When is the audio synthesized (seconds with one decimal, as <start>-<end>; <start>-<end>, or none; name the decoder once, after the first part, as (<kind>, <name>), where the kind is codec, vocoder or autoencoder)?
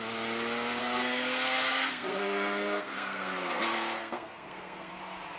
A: 0.8-3.6 (codec, SNAC); 4.0-5.0